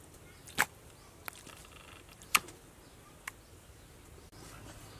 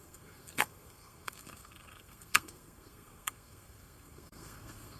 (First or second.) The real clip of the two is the first